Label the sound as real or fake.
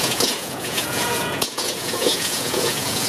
fake